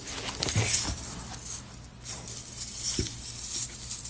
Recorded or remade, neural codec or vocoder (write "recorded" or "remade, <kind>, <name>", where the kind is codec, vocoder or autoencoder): recorded